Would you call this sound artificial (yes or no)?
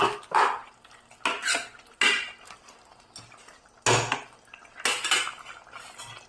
no